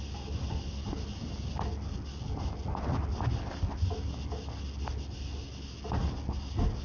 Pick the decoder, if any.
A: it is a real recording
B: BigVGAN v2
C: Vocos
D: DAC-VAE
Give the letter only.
A